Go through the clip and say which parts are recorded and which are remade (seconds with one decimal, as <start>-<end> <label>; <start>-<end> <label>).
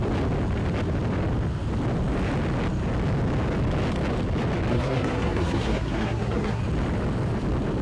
0.0-4.7 recorded; 4.7-6.6 remade; 6.6-7.8 recorded